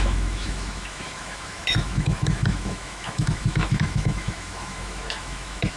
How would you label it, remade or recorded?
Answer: remade